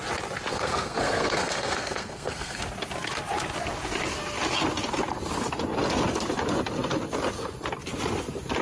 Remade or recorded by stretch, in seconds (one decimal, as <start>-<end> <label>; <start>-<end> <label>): 0.0-0.5 recorded; 0.5-2.6 remade; 2.6-8.6 recorded